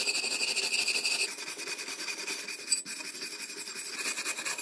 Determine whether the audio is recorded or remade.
recorded